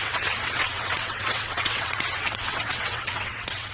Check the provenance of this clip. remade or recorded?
remade